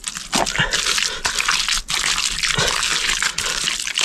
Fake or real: real